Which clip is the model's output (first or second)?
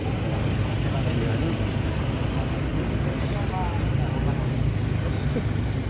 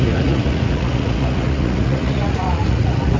second